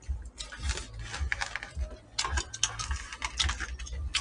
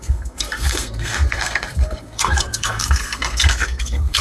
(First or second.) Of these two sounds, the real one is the first